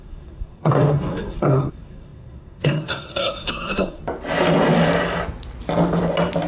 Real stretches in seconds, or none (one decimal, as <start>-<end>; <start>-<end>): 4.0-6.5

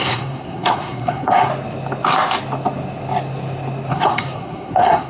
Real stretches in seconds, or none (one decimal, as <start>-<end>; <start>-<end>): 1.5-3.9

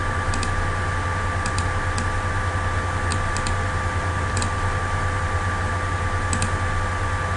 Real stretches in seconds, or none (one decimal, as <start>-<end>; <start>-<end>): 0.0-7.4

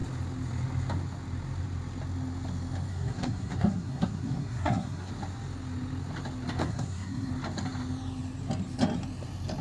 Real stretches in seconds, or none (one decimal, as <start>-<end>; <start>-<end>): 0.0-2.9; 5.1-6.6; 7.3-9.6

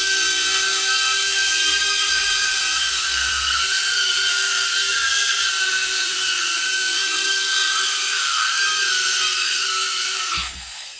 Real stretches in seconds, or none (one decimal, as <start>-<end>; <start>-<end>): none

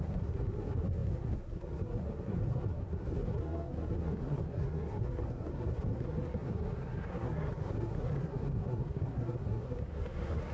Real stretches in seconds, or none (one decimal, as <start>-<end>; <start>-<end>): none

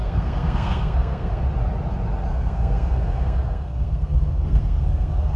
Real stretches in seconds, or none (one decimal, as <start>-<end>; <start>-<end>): 1.4-2.3

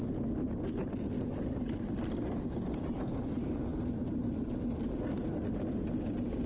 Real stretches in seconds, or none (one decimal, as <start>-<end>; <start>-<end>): 0.0-6.5